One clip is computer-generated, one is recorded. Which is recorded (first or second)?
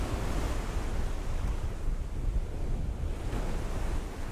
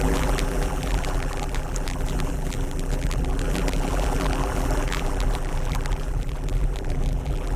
first